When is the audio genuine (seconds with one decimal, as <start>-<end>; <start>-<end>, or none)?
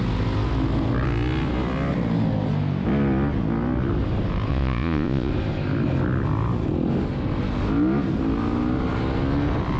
0.0-4.5; 5.3-9.8